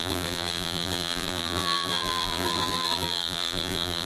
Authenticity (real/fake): fake